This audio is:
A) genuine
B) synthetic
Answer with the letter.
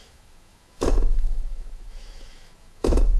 B